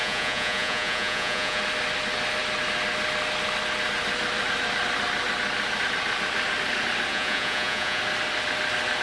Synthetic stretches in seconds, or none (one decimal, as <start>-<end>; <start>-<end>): 0.0-1.6; 7.1-8.0